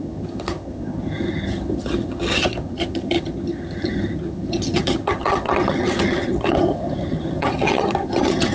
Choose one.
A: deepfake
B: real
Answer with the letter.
A